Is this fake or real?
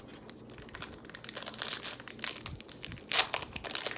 real